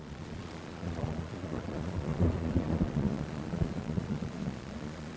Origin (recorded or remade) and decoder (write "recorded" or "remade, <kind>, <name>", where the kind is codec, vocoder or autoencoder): remade, vocoder, Vocos